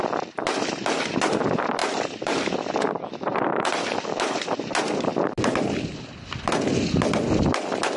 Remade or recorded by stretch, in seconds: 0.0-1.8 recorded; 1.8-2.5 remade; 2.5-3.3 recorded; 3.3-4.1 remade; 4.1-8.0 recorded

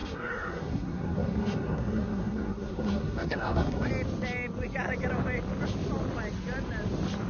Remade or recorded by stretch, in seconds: 0.0-3.9 remade; 3.9-7.3 recorded